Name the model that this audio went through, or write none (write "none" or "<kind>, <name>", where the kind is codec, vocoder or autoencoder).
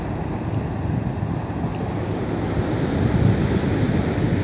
none